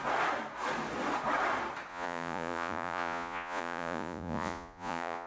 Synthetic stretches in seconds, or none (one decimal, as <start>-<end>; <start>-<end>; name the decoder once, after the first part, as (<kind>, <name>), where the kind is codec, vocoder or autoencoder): 1.9-5.3 (vocoder, Vocos)